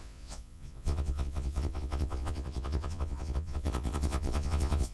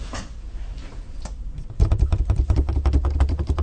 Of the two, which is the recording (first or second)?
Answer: second